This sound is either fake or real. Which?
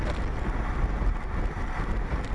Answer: real